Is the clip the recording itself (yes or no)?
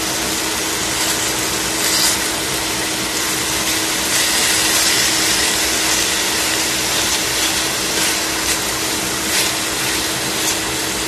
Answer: yes